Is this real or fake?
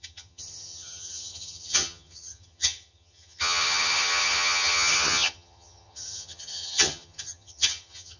fake